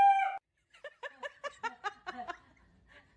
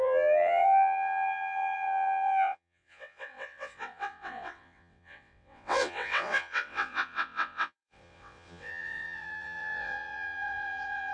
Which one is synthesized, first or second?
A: second